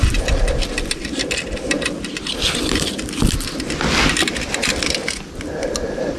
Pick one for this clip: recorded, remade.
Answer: recorded